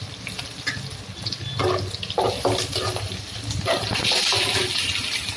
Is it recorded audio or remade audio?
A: recorded